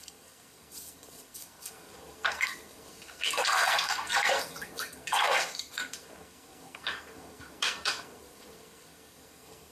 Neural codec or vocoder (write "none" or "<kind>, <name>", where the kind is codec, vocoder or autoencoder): codec, SNAC